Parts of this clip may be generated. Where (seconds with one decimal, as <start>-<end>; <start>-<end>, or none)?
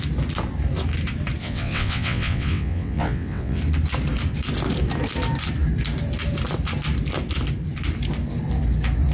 1.4-3.6